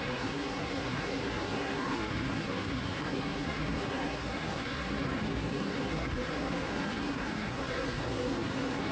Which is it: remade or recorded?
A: remade